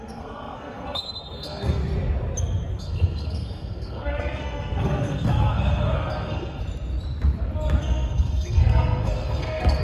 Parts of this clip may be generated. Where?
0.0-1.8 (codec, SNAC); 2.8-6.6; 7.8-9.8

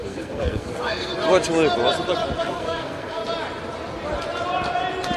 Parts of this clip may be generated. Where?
0.0-1.1 (codec, SNAC); 2.4-3.2

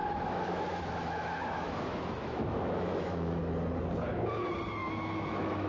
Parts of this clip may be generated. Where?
0.0-3.4 (autoencoder, DAC-VAE); 4.8-5.7

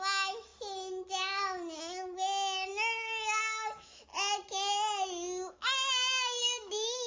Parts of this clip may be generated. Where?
0.0-0.5 (autoencoder, DAC-VAE); 1.8-4.1; 5.5-7.1

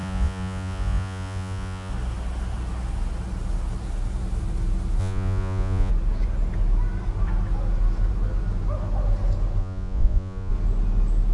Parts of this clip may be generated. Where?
0.0-1.9 (vocoder, Vocos); 5.0-5.9; 9.6-10.5

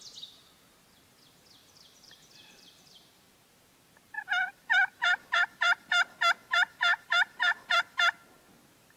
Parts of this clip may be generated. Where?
1.6-5.0 (vocoder, BigVGAN v2)

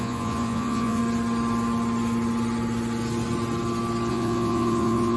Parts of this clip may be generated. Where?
0.0-1.0 (vocoder, Vocos); 4.1-5.2

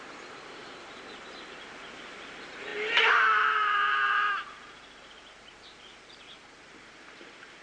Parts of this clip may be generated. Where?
0.0-7.6 (vocoder, BigVGAN v2)